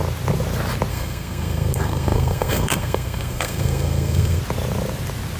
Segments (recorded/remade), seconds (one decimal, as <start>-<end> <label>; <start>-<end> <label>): 0.0-0.9 recorded; 0.9-4.4 remade; 4.4-5.4 recorded